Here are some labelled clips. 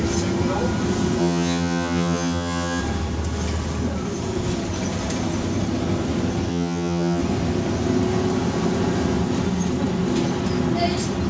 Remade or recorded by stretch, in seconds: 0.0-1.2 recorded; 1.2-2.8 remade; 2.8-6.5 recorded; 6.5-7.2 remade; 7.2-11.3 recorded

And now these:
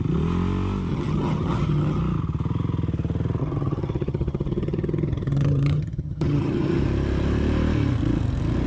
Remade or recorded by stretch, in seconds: 0.0-0.9 recorded; 0.9-2.0 remade; 2.0-3.4 recorded; 3.4-6.8 remade; 6.8-8.7 recorded

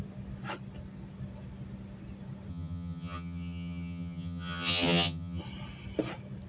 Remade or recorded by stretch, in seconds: 0.0-2.5 recorded; 2.5-5.4 remade; 5.4-6.5 recorded

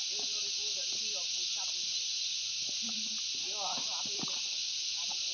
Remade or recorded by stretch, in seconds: 0.0-5.3 recorded